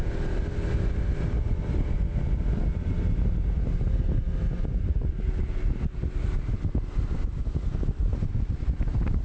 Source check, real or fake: real